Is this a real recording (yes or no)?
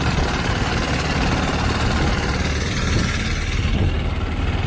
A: yes